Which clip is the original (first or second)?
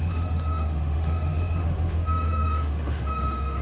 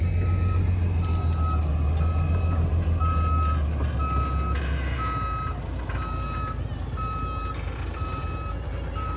second